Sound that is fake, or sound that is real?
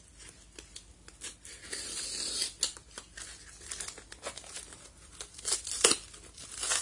real